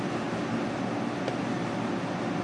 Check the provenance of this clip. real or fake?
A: real